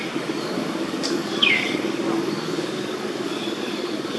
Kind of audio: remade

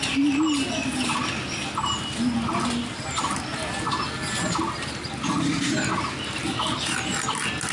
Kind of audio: recorded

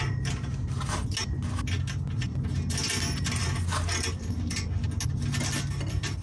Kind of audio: recorded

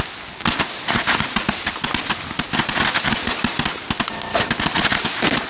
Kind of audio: recorded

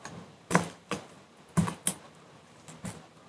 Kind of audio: recorded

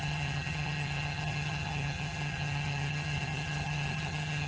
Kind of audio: remade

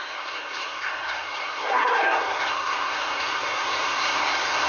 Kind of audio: remade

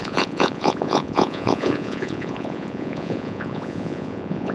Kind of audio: remade